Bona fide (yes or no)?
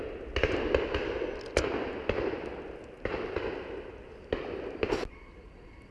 yes